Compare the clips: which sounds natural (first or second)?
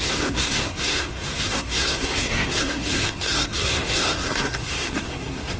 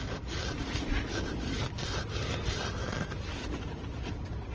second